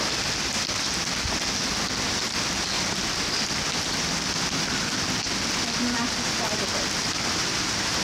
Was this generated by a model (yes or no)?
no